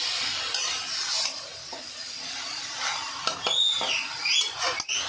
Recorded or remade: recorded